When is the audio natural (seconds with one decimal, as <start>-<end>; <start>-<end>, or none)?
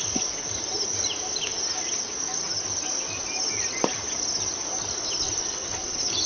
0.0-6.3